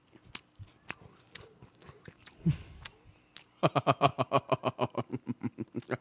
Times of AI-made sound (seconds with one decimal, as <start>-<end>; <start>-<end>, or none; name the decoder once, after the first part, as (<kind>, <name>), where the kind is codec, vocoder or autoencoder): none